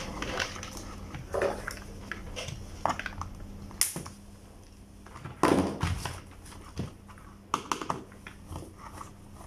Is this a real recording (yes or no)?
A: yes